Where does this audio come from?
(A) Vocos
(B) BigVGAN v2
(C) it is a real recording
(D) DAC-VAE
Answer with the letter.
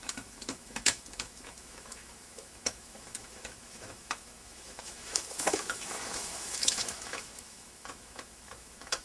D